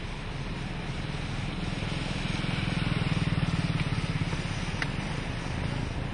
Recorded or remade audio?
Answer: recorded